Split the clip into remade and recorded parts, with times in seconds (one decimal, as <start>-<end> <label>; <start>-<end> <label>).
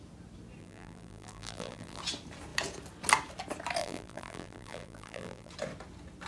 0.0-0.6 recorded; 0.6-2.0 remade; 2.0-3.8 recorded; 3.8-5.5 remade; 5.5-6.3 recorded